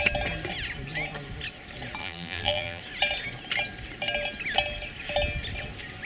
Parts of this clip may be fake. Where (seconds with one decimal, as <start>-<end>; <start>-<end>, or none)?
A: 2.0-2.8